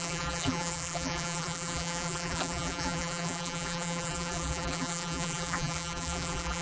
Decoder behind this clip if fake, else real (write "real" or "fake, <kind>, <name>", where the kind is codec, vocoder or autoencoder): fake, vocoder, BigVGAN v2